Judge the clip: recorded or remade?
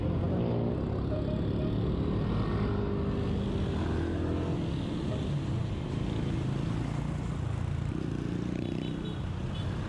recorded